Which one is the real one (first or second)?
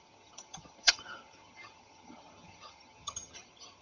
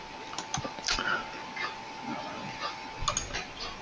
second